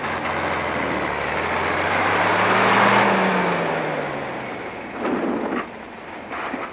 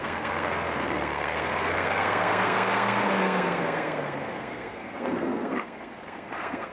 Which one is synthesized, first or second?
second